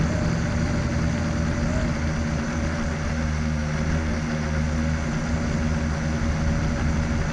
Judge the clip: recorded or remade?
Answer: recorded